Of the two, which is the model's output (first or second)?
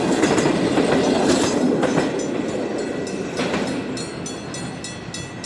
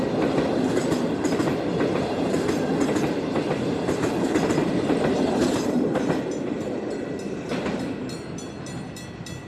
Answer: second